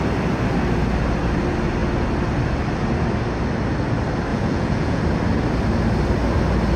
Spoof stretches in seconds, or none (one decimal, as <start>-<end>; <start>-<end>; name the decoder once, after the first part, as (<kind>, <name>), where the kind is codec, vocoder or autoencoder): 4.3-5.0 (vocoder, Vocos)